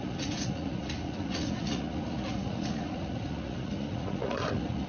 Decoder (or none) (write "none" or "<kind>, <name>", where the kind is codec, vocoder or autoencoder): vocoder, Vocos